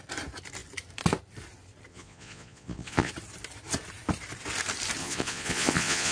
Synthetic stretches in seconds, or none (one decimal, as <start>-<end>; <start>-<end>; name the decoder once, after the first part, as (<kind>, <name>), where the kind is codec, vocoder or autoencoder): 1.9-3.1 (vocoder, Vocos); 5.0-6.1